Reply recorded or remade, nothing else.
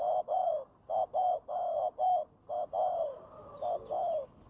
recorded